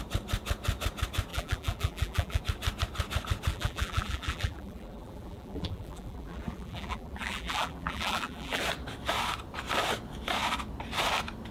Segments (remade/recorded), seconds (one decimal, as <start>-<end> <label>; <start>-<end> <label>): 0.0-1.3 recorded; 1.3-2.4 remade; 2.4-3.5 recorded; 3.5-8.6 remade; 8.6-11.5 recorded